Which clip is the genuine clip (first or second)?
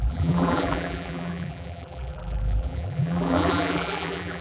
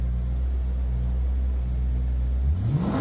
second